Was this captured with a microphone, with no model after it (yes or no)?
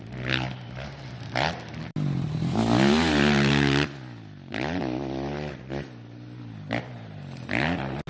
yes